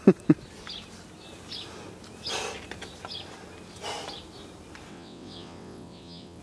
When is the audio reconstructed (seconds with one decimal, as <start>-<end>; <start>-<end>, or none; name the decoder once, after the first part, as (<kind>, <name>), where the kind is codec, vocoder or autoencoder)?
4.9-6.4 (vocoder, WaveNeXt)

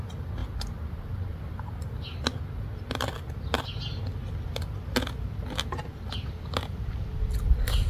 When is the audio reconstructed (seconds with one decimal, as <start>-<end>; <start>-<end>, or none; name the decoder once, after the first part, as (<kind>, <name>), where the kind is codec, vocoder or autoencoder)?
none